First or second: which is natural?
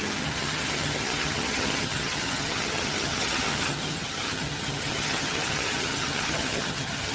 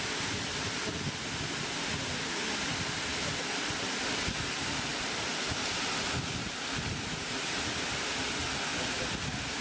second